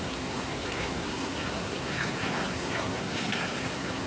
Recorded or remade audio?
remade